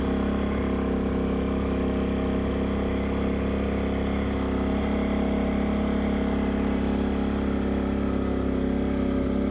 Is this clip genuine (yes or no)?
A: yes